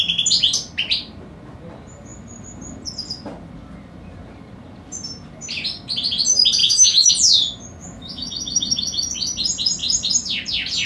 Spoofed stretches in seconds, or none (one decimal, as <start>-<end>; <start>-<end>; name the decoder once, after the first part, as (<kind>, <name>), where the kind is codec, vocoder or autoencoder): 6.6-7.1 (autoencoder, DAC-VAE); 7.8-8.3